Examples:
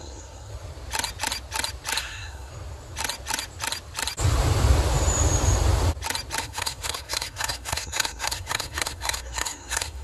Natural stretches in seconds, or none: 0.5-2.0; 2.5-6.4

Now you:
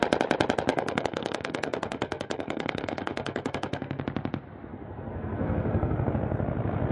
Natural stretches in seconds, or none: 0.0-0.7; 4.0-4.7; 6.1-6.9

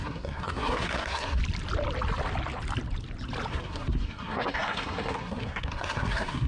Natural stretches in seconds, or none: 1.4-3.5

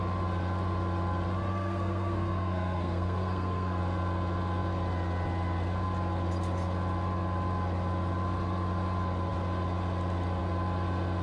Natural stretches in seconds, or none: 0.0-1.5; 3.8-11.2

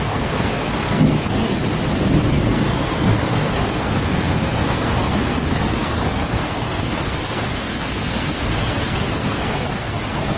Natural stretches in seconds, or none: 1.6-2.3

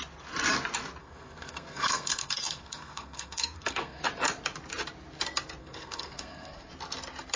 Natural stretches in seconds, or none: 0.0-1.0; 4.0-5.6; 6.7-7.4

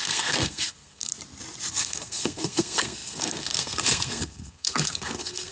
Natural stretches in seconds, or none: 1.1-1.7

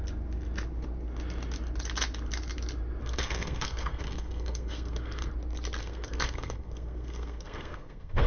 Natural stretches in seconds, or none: 0.0-3.0; 5.3-5.8